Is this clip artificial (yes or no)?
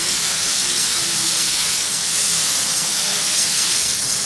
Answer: yes